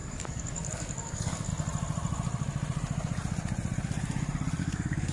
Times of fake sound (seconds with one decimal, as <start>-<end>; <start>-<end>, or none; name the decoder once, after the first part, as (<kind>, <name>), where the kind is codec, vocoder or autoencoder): 0.0-1.5 (codec, DAC); 4.6-5.1